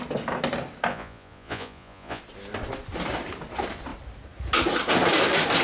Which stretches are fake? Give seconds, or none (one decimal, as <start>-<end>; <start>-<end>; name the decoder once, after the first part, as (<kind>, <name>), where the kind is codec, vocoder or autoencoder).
0.9-2.2 (vocoder, Vocos)